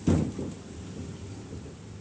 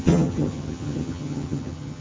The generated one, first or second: second